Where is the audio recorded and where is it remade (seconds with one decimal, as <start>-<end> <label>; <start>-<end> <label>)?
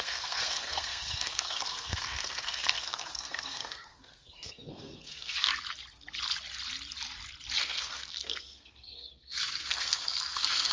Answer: 0.0-5.5 remade; 5.5-7.6 recorded; 7.6-10.7 remade